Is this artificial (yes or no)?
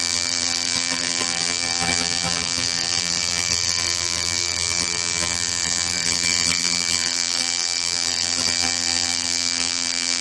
yes